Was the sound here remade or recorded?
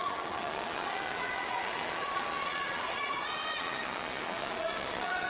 remade